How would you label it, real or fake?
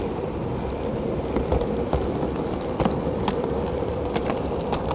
real